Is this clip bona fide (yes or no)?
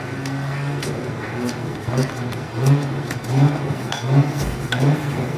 no